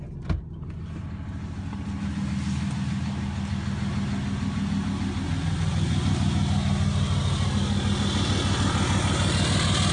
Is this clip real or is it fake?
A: real